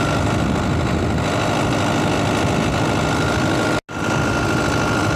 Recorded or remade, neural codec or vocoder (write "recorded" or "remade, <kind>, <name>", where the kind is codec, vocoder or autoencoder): recorded